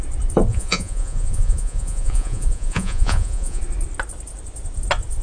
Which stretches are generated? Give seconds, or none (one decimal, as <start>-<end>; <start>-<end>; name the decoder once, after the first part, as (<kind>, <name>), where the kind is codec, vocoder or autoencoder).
0.5-3.6 (vocoder, Vocos)